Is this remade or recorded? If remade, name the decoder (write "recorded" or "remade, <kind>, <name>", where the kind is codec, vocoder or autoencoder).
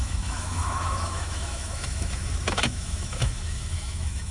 remade, autoencoder, DAC-VAE